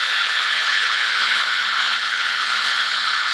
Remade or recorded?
remade